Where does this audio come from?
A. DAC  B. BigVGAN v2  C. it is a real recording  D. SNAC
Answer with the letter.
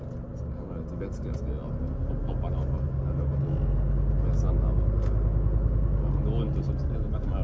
C